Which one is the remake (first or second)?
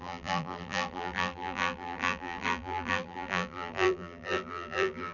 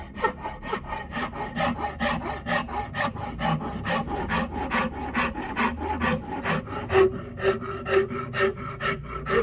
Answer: first